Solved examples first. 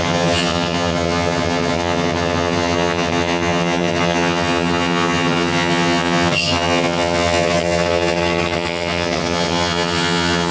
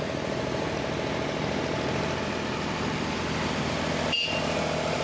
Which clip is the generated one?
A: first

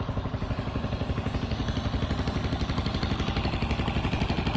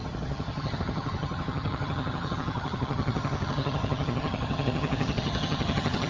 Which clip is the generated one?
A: second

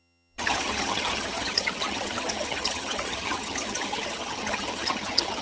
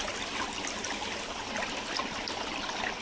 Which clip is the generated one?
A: first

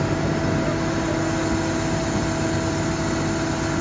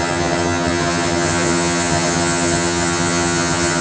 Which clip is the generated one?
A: second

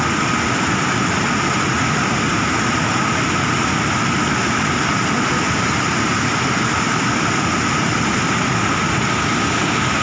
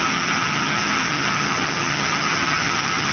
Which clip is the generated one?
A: second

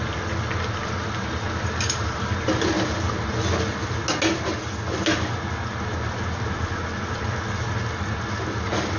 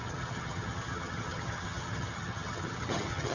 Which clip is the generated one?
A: second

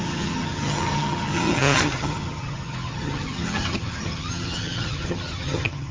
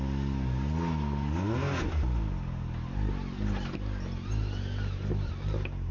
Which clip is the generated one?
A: first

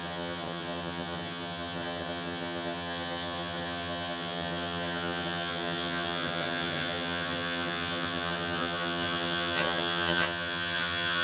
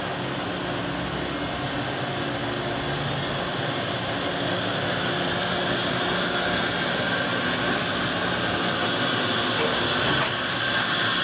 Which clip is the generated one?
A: first